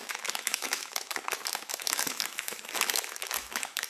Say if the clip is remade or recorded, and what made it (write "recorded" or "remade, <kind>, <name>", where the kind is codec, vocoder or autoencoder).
remade, autoencoder, DAC-VAE